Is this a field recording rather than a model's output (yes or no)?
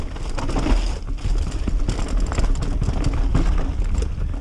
yes